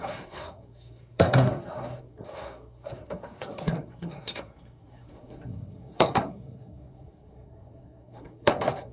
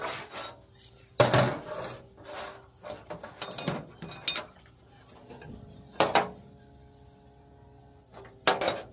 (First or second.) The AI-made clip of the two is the first